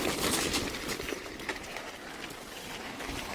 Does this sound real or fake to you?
fake